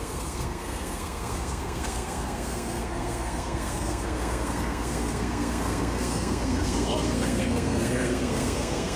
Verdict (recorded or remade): remade